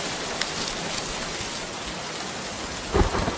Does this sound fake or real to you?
real